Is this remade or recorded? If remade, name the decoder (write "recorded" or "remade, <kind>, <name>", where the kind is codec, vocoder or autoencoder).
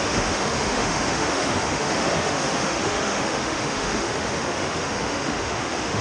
remade, autoencoder, DAC-VAE